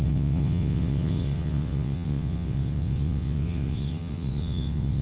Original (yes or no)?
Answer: no